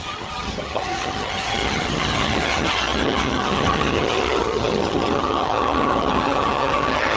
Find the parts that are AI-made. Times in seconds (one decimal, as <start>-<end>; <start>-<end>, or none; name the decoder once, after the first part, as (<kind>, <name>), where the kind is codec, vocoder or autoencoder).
0.0-7.2 (vocoder, HiFi-GAN)